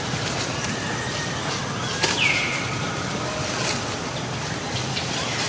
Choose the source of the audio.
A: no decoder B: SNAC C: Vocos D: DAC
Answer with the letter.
A